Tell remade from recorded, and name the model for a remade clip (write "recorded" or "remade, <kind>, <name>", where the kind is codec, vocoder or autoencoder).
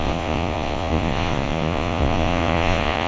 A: remade, vocoder, Vocos